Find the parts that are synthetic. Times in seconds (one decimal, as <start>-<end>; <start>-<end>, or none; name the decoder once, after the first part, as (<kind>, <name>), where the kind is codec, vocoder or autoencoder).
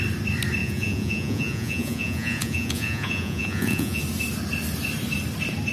0.6-4.0 (vocoder, Vocos)